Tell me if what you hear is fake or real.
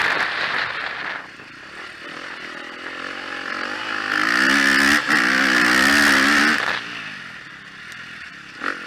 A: real